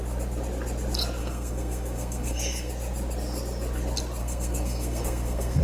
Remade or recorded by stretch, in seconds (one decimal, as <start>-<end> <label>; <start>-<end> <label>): 0.0-1.2 recorded; 1.2-2.7 remade; 2.7-4.2 recorded; 4.2-5.6 remade